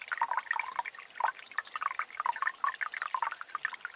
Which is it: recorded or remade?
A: recorded